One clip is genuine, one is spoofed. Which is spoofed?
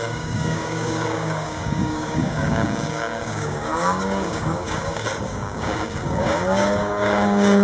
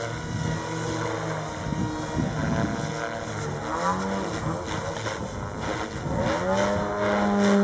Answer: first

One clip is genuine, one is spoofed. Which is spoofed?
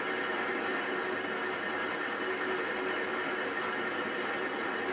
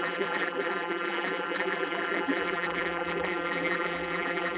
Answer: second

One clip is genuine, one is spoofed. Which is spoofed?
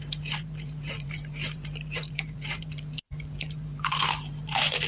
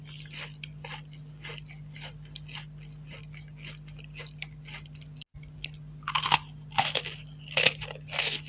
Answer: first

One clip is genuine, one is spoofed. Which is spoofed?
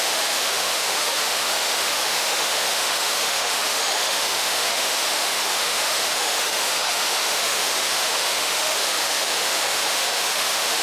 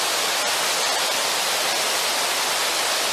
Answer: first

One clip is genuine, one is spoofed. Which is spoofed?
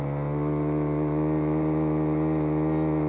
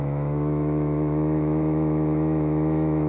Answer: second